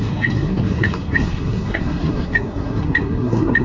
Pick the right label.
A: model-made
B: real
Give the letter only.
A